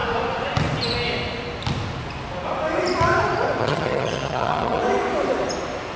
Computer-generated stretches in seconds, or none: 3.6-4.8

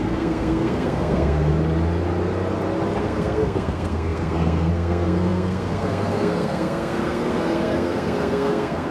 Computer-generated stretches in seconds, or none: 0.0-1.5; 3.0-8.9

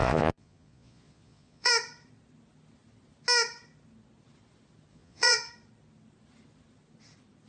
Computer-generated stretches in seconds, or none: 0.0-1.7; 4.9-5.5

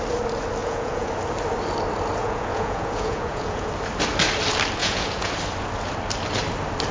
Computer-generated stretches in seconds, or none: 0.6-1.1; 2.2-3.7; 4.8-5.3

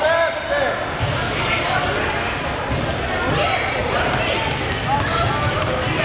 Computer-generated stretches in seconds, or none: none

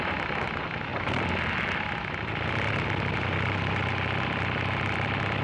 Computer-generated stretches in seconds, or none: 0.9-1.5

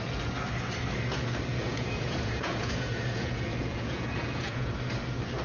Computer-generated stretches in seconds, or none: 1.5-4.7

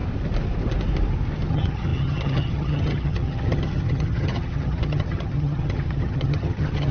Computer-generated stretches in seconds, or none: 1.5-6.9